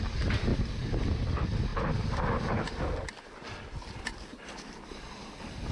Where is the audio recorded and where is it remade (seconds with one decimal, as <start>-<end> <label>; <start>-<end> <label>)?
0.0-5.7 recorded